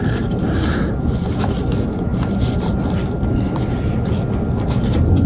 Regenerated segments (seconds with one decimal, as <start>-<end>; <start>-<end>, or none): none